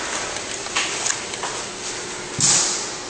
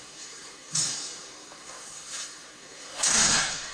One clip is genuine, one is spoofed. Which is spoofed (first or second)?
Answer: second